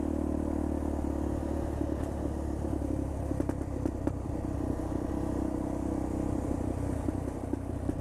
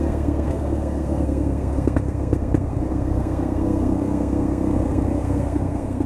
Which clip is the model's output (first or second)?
second